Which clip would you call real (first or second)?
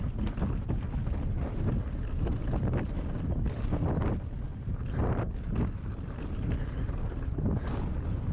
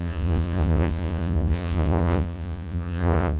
first